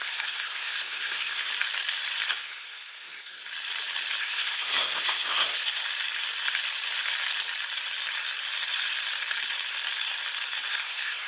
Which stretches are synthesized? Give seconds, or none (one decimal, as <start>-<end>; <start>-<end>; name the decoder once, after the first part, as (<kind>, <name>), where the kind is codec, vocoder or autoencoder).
0.0-1.5 (codec, SNAC); 2.3-3.4; 4.2-5.8; 10.7-11.3